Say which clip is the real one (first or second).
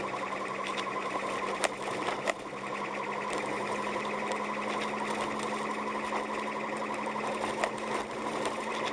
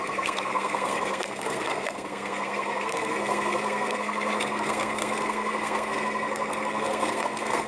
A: first